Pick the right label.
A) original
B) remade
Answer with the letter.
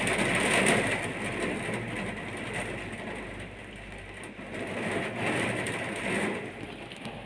A